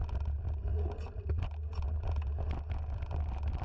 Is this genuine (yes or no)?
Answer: yes